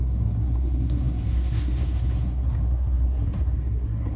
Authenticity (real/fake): fake